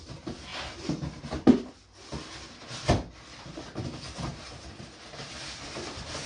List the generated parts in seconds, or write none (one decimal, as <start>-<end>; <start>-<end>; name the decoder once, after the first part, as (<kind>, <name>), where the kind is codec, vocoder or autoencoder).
none